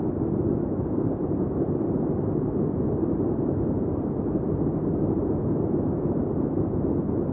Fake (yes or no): no